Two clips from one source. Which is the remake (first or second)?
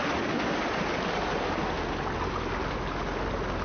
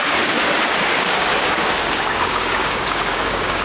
second